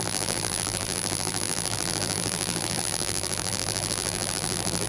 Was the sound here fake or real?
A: fake